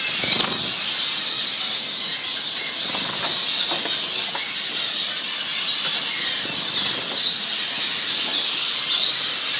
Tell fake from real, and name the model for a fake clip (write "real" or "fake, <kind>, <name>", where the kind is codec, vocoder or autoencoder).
real